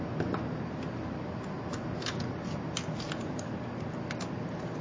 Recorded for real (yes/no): yes